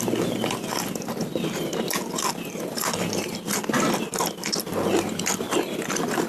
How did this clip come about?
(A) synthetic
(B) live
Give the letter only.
B